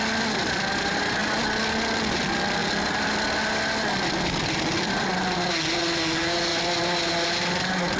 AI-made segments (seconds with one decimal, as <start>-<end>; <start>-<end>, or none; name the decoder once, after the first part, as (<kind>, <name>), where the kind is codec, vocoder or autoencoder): 1.2-2.1 (vocoder, BigVGAN v2); 2.6-5.5; 6.5-7.1